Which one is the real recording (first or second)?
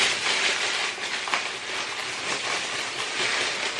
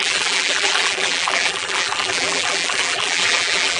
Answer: first